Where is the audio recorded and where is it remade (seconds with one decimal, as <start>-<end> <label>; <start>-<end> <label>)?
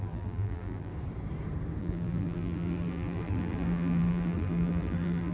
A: 0.0-0.9 remade; 0.9-1.8 recorded; 1.8-5.3 remade